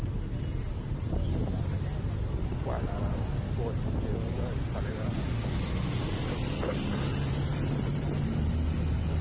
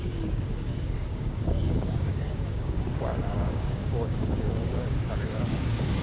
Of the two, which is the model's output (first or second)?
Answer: second